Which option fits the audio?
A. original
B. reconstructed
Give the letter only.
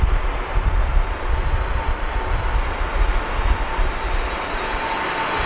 A